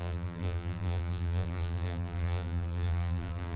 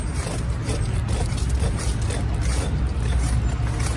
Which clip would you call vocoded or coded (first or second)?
first